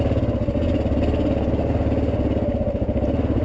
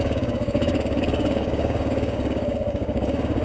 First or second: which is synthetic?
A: second